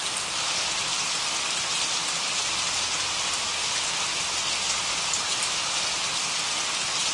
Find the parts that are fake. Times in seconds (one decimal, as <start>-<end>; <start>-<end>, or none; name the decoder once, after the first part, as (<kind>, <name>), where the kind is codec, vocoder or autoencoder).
none